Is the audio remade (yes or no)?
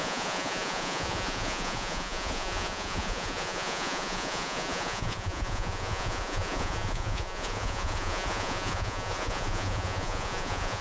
yes